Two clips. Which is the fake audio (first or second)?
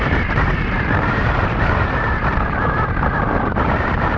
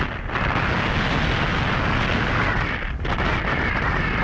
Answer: first